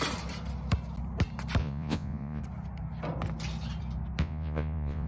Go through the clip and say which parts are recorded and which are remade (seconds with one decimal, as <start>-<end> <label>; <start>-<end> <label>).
0.0-1.6 recorded; 1.6-2.4 remade; 2.4-4.2 recorded; 4.2-5.1 remade